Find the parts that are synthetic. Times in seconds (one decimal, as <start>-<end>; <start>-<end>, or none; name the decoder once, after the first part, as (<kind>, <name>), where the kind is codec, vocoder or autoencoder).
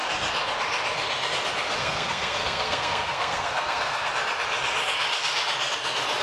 1.8-4.1 (codec, SNAC)